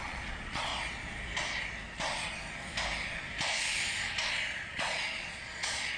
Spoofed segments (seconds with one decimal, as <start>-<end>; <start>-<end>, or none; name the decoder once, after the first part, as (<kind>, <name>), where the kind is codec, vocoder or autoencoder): 0.0-0.7 (vocoder, Vocos); 4.3-6.0

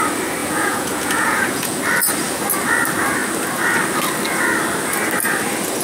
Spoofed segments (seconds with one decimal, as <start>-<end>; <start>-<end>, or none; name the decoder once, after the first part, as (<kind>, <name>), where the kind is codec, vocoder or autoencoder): 0.4-1.8 (vocoder, Vocos)